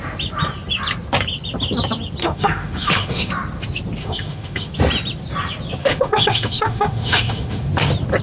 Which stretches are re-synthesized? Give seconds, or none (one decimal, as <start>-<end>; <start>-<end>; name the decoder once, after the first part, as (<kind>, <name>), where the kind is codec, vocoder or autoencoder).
2.2-3.3 (autoencoder, DAC-VAE); 4.0-4.7; 5.8-7.7